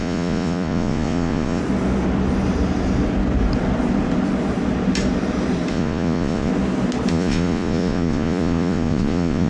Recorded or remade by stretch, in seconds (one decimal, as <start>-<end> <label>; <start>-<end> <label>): 0.0-1.6 remade; 1.6-5.7 recorded; 5.7-6.5 remade; 6.5-7.1 recorded; 7.1-9.5 remade